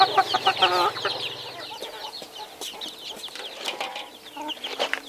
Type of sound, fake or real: real